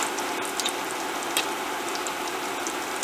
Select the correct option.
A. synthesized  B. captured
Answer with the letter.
B